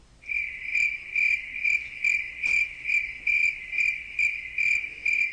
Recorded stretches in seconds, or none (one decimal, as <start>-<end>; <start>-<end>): 0.0-5.3